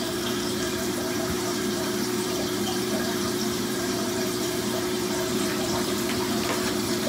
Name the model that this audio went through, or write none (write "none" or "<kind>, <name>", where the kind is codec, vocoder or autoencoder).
vocoder, BigVGAN v2